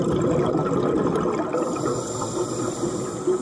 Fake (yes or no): no